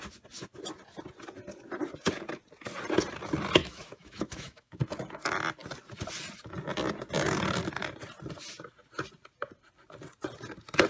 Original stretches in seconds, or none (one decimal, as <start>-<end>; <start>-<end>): 0.0-3.6; 4.8-10.9